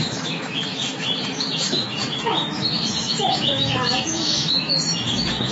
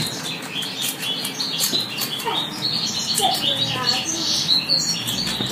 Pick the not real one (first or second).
first